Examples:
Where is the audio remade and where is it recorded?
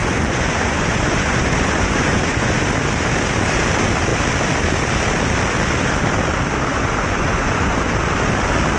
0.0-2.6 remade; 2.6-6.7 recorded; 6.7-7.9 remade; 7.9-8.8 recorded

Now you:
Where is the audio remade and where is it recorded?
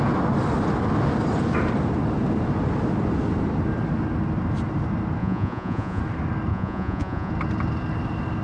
0.0-5.2 recorded; 5.2-6.0 remade; 6.0-6.5 recorded; 6.5-7.3 remade; 7.3-8.4 recorded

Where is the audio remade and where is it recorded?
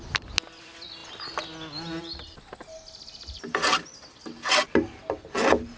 0.0-5.8 recorded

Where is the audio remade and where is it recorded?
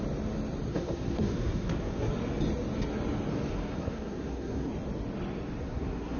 0.0-0.7 recorded; 0.7-2.1 remade; 2.1-3.5 recorded; 3.5-4.7 remade; 4.7-5.6 recorded; 5.6-6.2 remade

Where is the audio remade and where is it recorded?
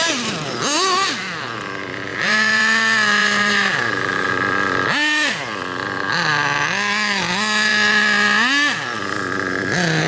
0.0-2.1 recorded; 2.1-2.6 remade; 2.6-3.2 recorded; 3.2-4.3 remade; 4.3-10.1 recorded